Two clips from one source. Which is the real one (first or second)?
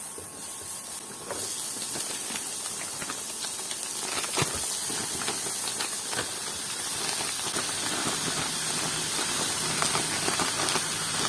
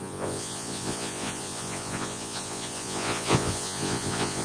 first